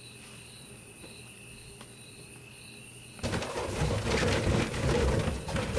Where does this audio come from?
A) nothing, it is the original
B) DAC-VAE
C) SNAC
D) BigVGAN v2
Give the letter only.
D